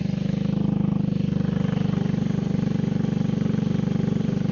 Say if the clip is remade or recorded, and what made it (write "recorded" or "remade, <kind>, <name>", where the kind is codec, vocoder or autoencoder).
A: recorded